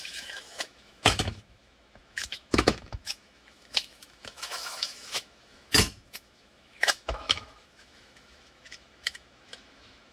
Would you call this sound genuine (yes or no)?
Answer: no